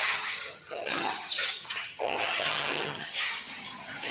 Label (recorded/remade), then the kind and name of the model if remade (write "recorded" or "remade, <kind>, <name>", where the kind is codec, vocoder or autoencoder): remade, vocoder, HiFi-GAN